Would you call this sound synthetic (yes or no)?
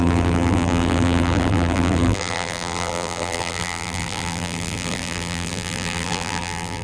yes